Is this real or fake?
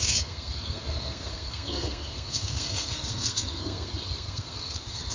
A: fake